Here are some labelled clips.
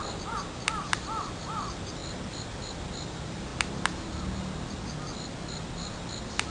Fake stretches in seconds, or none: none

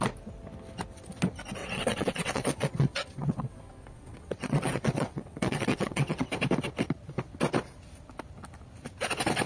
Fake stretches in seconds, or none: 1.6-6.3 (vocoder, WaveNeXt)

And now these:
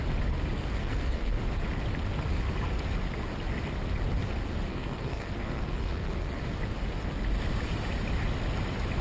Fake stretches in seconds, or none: 0.8-1.4 (codec, SNAC); 4.7-6.4

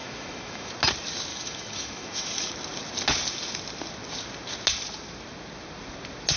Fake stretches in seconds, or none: 0.0-0.7 (autoencoder, DAC-VAE); 1.3-2.5

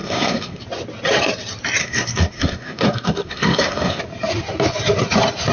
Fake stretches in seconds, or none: 0.0-0.6 (codec, SNAC); 1.8-4.0

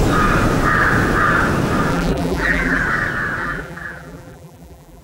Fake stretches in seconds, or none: 1.9-2.8 (vocoder, BigVGAN v2); 3.4-5.0